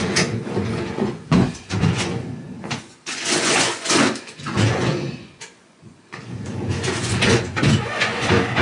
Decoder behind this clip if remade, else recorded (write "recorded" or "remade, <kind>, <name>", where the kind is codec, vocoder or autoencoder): remade, vocoder, Vocos